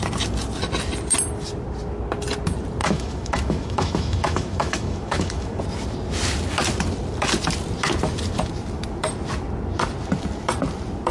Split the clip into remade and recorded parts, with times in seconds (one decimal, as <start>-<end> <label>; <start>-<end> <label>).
0.0-2.8 recorded; 2.8-5.6 remade; 5.6-11.1 recorded

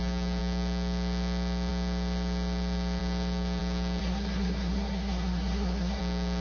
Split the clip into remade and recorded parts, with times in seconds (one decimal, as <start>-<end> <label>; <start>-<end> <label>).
0.0-4.0 recorded; 4.0-6.0 remade; 6.0-6.4 recorded